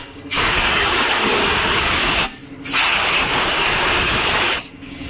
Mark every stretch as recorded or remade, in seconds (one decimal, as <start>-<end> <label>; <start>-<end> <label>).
0.0-2.4 remade; 2.4-2.9 recorded; 2.9-5.1 remade